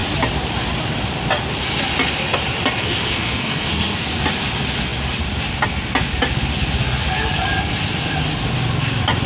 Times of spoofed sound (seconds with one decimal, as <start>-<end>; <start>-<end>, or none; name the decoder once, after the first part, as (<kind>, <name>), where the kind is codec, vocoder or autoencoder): 2.8-4.1 (codec, SNAC)